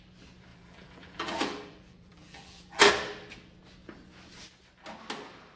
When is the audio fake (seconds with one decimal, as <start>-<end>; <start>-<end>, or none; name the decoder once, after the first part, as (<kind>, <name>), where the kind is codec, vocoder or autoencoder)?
0.5-2.9 (vocoder, BigVGAN v2)